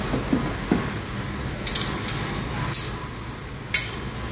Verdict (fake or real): real